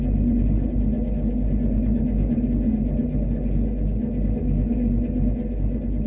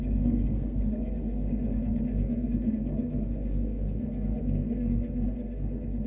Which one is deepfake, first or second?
second